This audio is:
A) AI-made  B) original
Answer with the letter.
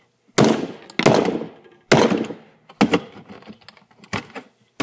B